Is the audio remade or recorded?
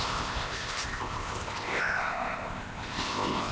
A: remade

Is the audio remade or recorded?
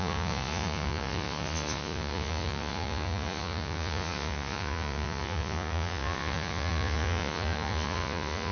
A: remade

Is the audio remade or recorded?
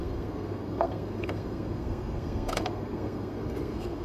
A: remade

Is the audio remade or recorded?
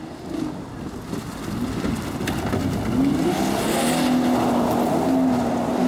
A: recorded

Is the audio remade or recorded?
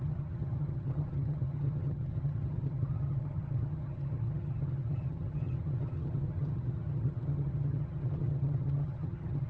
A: remade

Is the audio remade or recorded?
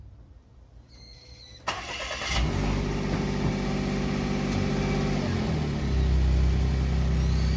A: recorded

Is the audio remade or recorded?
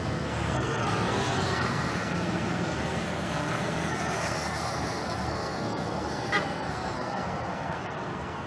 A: remade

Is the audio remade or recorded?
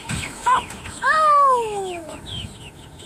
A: remade